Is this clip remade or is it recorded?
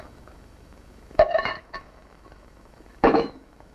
remade